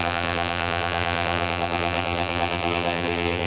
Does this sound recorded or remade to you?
remade